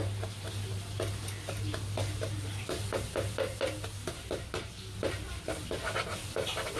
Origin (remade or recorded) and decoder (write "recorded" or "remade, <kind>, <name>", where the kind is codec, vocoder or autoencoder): recorded